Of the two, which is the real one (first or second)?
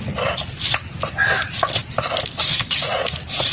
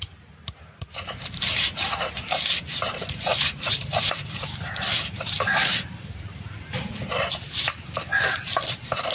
first